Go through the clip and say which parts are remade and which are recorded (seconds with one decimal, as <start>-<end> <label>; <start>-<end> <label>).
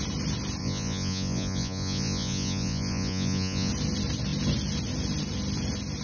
0.0-0.6 recorded; 0.6-3.7 remade; 3.7-6.0 recorded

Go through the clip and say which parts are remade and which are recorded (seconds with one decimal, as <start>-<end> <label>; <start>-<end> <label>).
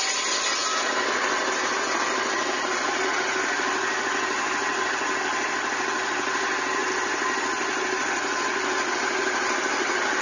0.0-10.2 recorded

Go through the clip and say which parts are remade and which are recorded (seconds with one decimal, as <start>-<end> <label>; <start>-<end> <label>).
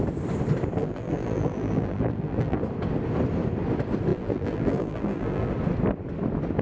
0.0-0.8 recorded; 0.8-2.6 remade; 2.6-4.1 recorded; 4.1-5.5 remade; 5.5-6.6 recorded